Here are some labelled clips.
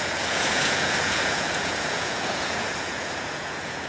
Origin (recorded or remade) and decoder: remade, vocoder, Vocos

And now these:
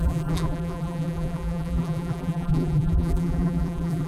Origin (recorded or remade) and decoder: remade, vocoder, BigVGAN v2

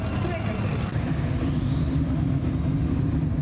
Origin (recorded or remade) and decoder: recorded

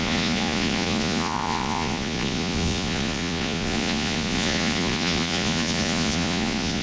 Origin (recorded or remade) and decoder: remade, vocoder, Vocos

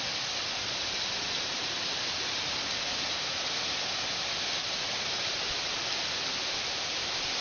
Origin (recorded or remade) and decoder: recorded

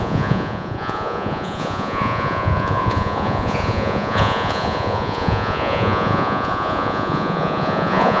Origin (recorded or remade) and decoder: remade, vocoder, Vocos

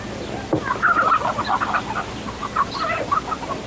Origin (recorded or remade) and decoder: recorded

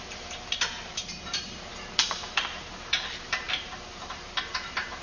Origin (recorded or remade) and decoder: remade, vocoder, BigVGAN v2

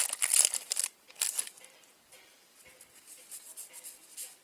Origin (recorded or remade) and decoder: recorded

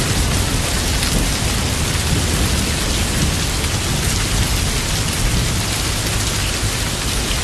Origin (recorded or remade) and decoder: recorded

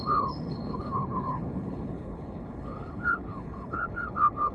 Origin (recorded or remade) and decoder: remade, codec, HILCodec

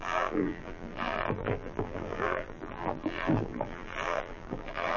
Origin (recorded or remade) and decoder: remade, vocoder, BigVGAN v2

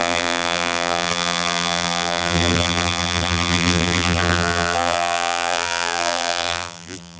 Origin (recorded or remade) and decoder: remade, vocoder, BigVGAN v2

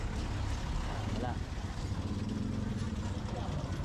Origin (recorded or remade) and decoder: recorded